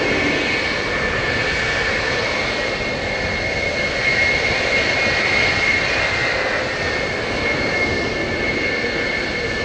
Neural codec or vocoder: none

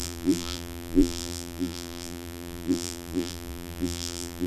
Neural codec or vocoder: vocoder, BigVGAN v2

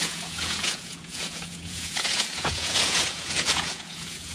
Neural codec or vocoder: vocoder, Vocos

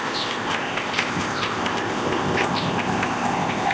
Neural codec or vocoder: codec, ZipCodec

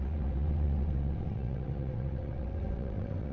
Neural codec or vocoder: vocoder, WaveNeXt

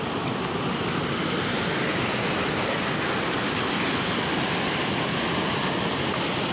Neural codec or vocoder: none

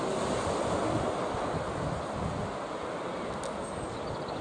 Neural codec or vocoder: none